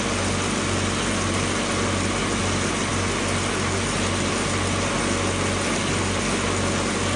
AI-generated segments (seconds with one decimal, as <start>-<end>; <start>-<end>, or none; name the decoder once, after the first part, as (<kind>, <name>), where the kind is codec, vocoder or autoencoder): none